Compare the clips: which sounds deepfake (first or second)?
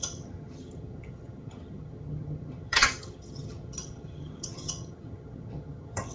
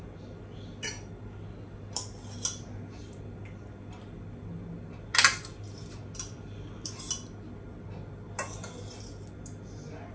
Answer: first